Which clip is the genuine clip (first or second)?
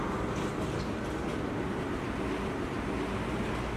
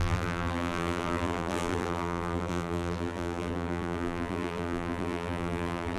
first